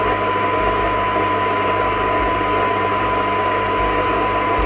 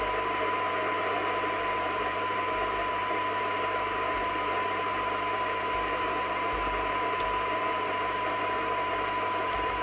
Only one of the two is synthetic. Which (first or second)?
second